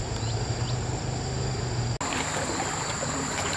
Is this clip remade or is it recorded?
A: recorded